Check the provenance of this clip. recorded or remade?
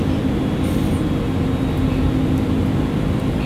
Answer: recorded